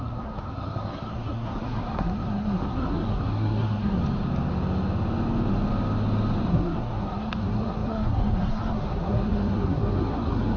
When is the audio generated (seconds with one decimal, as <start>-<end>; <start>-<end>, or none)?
0.0-4.0; 6.5-10.6